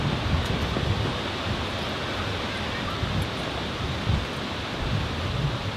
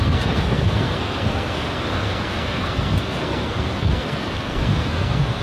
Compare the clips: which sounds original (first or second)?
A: first